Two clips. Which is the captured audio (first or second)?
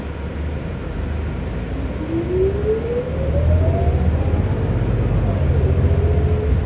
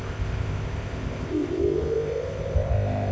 first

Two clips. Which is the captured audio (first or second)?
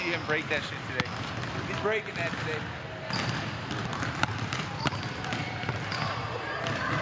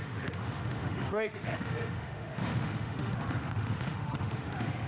first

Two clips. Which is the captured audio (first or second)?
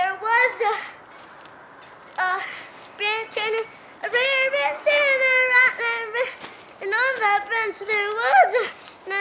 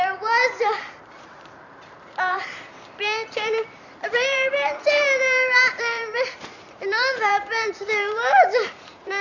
first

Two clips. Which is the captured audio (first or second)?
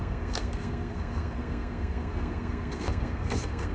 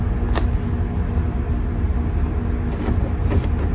second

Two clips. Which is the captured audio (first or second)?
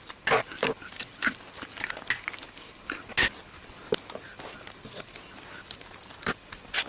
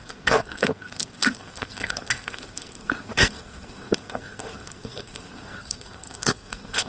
first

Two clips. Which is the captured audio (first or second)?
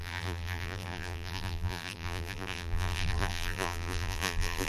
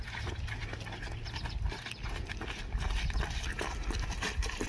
second